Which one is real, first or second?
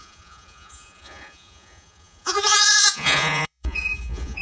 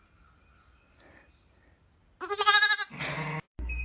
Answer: second